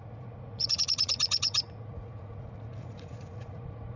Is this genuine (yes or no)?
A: no